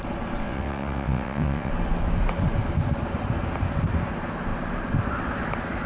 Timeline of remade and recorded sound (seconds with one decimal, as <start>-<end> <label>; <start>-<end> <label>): 0.0-0.4 recorded; 0.4-1.7 remade; 1.7-5.9 recorded